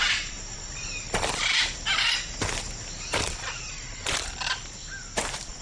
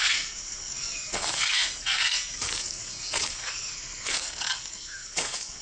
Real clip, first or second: first